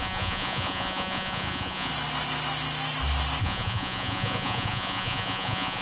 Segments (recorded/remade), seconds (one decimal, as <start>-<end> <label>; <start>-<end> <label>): 0.0-1.9 remade; 1.9-3.4 recorded; 3.4-5.8 remade